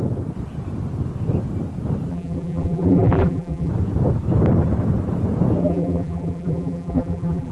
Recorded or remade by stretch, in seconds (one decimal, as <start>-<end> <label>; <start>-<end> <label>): 0.0-2.1 recorded; 2.1-3.7 remade; 3.7-5.6 recorded; 5.6-7.5 remade